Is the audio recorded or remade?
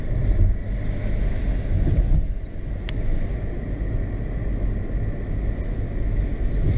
recorded